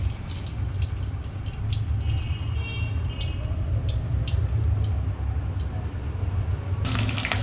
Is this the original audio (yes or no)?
yes